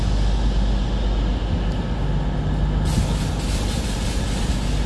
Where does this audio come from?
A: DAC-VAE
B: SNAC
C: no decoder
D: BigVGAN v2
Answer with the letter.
C